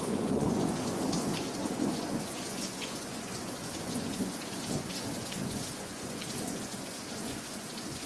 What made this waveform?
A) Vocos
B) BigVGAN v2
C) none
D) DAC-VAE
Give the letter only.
A